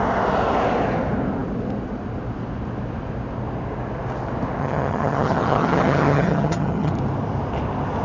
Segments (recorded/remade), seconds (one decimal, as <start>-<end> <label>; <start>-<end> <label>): 0.0-4.6 recorded; 4.6-6.9 remade; 6.9-8.0 recorded